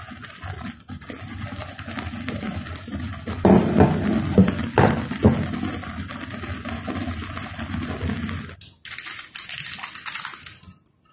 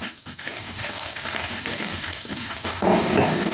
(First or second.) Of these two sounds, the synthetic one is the second